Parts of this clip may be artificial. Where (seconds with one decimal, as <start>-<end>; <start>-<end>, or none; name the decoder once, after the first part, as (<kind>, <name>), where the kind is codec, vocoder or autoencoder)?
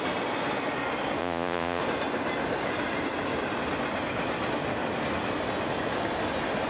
1.2-1.8 (vocoder, Vocos)